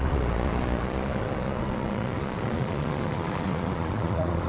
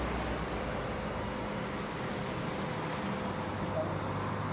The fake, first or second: first